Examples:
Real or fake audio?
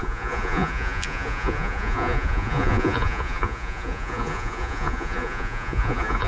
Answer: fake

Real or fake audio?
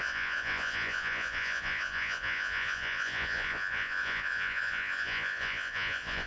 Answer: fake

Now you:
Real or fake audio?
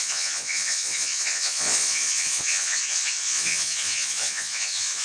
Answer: fake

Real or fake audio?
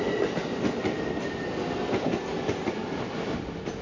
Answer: real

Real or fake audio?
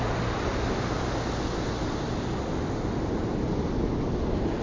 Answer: real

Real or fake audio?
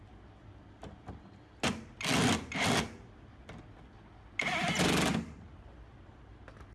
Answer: real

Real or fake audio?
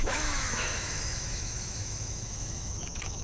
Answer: fake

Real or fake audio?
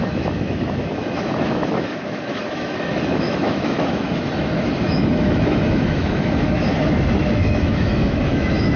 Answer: fake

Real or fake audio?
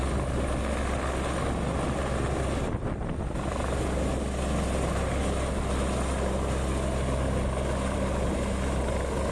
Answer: real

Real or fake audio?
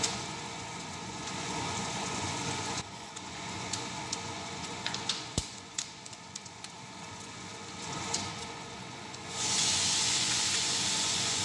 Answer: fake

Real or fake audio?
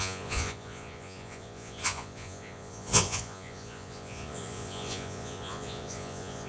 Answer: fake